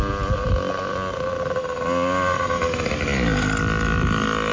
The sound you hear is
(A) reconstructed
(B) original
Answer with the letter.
B